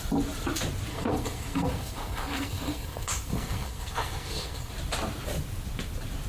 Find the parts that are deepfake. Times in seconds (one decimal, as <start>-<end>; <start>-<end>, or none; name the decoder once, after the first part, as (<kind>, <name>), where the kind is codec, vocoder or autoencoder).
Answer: 0.9-4.7 (codec, SNAC)